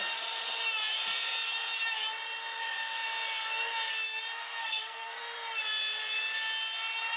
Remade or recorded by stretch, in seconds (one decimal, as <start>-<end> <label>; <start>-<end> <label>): 0.0-4.6 recorded; 4.6-5.2 remade; 5.2-7.2 recorded